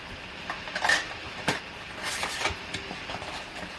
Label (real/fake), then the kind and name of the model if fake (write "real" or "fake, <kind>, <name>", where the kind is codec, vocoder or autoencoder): real